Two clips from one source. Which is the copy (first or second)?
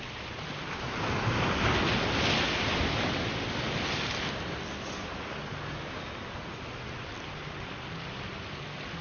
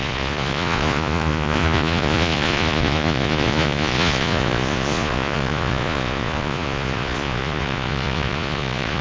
second